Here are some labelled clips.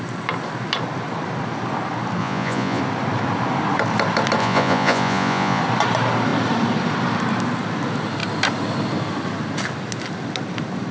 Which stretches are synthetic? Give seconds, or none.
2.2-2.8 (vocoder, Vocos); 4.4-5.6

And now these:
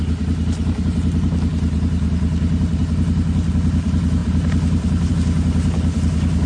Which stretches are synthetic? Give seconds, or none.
none